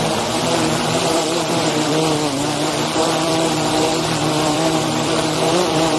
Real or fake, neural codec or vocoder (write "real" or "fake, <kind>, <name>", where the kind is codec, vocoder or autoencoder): fake, vocoder, BigVGAN v2